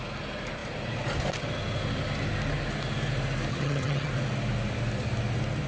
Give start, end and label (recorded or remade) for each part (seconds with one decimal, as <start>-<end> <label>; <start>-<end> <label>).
0.0-3.5 recorded; 3.5-4.1 remade; 4.1-5.7 recorded